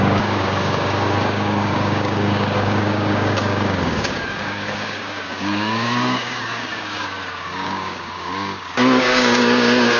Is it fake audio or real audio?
fake